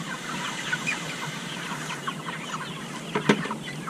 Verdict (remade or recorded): recorded